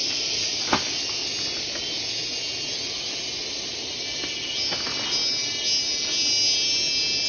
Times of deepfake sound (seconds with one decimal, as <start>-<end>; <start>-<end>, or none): none